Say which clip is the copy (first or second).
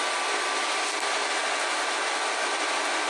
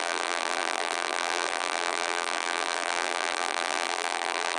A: second